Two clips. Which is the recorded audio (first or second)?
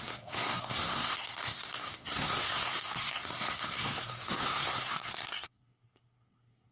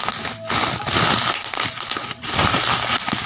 second